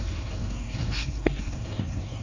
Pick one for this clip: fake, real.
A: fake